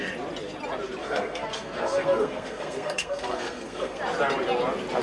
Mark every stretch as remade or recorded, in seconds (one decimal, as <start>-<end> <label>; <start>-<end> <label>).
0.0-1.0 recorded; 1.0-4.0 remade; 4.0-5.0 recorded